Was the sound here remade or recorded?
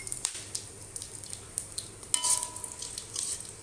recorded